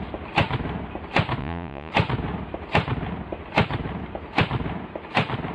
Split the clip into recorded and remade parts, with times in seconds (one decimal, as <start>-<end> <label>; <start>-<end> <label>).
0.0-1.4 recorded; 1.4-1.9 remade; 1.9-5.5 recorded